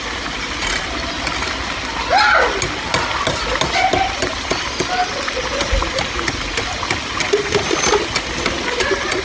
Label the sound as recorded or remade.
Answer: recorded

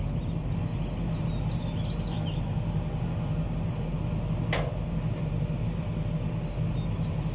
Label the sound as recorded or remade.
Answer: recorded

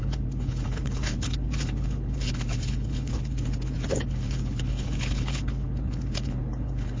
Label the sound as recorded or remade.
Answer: remade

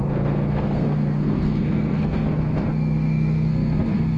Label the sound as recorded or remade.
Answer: remade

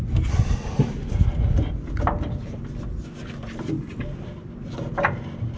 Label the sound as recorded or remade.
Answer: recorded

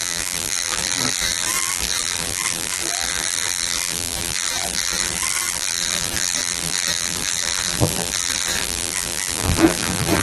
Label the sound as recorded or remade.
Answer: remade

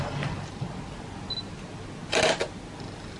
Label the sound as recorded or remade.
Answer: recorded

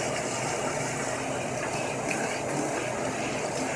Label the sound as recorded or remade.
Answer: recorded